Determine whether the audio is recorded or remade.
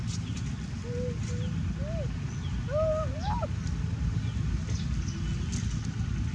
recorded